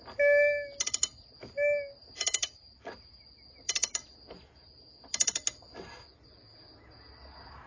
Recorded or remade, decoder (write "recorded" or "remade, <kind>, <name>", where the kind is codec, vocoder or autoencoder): recorded